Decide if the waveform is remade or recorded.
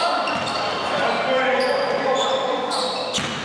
recorded